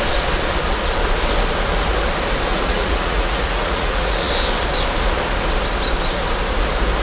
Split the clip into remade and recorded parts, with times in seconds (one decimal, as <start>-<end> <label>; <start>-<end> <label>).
0.0-2.5 recorded; 2.5-4.3 remade; 4.3-7.0 recorded